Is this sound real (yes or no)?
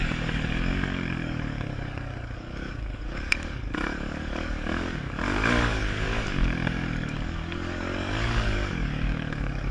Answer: no